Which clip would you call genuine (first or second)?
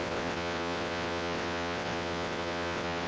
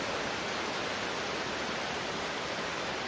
second